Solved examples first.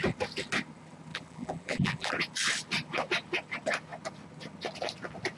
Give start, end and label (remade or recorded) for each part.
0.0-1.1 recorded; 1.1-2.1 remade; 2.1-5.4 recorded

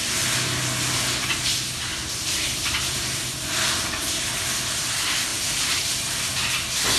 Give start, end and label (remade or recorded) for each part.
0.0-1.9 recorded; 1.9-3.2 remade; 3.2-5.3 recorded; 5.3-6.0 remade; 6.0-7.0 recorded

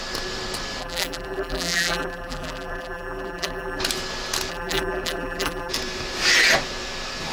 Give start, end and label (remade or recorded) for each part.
0.0-0.8 recorded; 0.8-3.8 remade; 3.8-4.5 recorded; 4.5-5.7 remade; 5.7-7.3 recorded

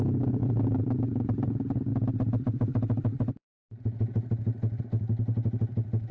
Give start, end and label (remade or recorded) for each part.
0.0-0.4 recorded; 0.4-1.5 remade; 1.5-6.1 recorded

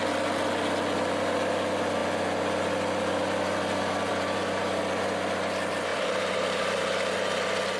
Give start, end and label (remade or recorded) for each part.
0.0-5.9 recorded; 5.9-6.8 remade; 6.8-7.8 recorded